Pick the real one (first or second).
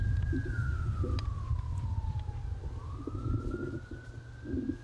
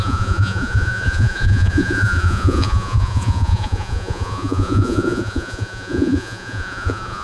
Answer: first